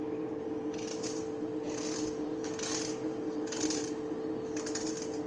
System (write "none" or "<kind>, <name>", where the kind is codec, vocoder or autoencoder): none